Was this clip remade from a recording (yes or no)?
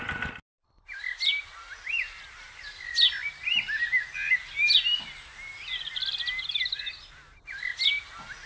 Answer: no